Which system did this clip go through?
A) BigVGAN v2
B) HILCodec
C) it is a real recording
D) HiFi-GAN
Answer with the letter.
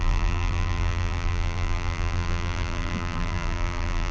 A